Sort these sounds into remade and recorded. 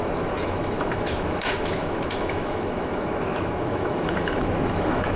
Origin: remade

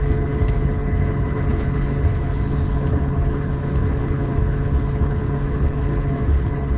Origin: remade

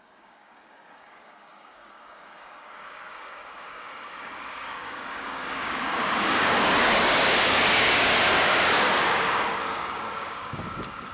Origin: remade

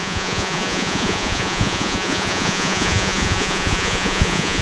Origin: remade